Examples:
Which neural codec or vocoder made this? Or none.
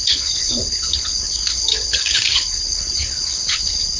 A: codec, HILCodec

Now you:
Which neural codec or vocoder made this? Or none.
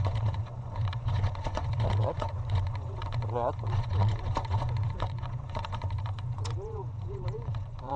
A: vocoder, Vocos